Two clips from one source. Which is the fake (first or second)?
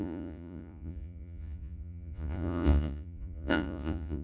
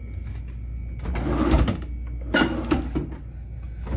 first